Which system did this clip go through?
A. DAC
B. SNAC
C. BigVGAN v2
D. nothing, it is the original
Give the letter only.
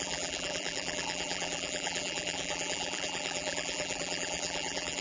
C